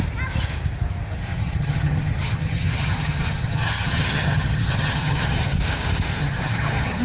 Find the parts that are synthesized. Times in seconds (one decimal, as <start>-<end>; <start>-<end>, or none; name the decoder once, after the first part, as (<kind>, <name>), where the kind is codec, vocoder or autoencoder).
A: 1.3-5.5 (vocoder, HiFi-GAN); 6.2-7.0